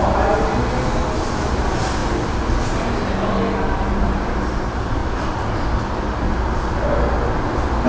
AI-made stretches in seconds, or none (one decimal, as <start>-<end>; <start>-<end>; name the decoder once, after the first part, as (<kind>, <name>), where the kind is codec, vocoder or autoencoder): none